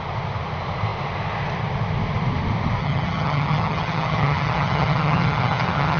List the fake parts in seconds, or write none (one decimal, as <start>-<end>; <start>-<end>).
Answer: 2.8-6.0